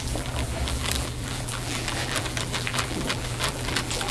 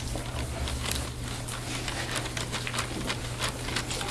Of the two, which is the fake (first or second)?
first